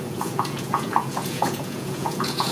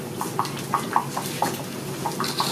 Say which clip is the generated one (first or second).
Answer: first